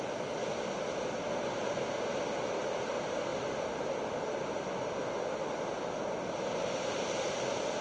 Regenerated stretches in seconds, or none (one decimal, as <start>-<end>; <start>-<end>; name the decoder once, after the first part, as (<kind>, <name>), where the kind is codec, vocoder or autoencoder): none

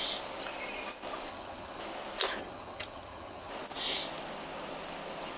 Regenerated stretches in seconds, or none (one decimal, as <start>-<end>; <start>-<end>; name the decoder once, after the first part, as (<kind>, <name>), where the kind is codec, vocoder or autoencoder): 1.3-1.8 (vocoder, HiFi-GAN); 2.4-3.5

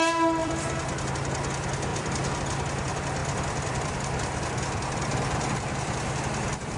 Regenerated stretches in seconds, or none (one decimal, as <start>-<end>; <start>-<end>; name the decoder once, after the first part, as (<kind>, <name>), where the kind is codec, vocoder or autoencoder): 0.4-1.1 (vocoder, BigVGAN v2); 1.9-2.4; 3.2-6.8

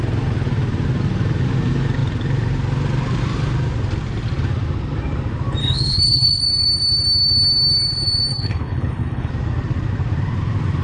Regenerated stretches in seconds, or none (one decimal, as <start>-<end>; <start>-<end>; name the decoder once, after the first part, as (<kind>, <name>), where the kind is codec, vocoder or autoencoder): 5.6-6.4 (codec, HILCodec); 8.3-9.3

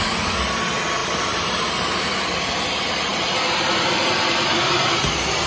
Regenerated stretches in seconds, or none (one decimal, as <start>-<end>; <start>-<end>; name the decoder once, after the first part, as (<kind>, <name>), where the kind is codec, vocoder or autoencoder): 1.0-2.6 (vocoder, BigVGAN v2); 3.1-5.5

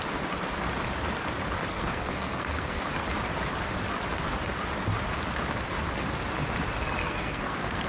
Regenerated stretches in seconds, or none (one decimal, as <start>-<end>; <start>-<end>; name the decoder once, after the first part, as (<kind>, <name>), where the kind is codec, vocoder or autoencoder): 1.7-2.8 (codec, SNAC); 7.0-7.9